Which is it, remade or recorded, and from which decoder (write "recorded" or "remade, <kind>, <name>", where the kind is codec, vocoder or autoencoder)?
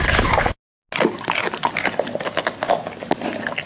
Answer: recorded